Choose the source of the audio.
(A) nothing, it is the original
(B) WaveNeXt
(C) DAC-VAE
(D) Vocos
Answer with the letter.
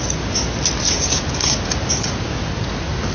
A